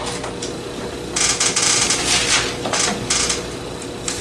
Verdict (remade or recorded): recorded